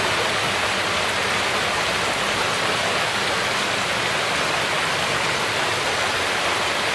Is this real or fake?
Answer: real